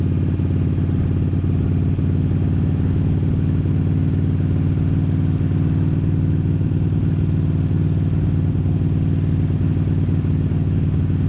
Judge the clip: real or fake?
real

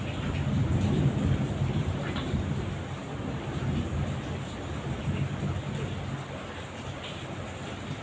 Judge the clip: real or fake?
real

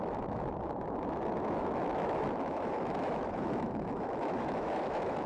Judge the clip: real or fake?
fake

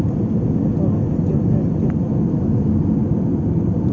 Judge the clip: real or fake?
real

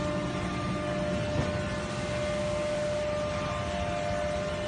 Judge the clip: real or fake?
real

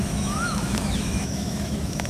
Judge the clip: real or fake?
fake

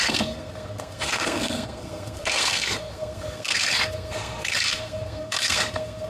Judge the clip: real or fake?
fake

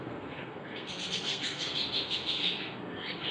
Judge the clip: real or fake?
fake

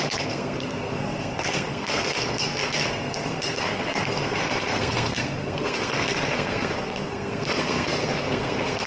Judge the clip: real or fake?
fake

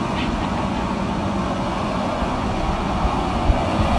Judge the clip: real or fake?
fake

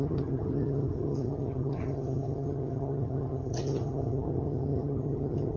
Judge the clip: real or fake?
fake